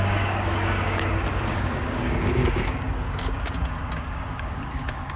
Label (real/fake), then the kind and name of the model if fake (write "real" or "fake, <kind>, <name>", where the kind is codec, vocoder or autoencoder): fake, codec, DAC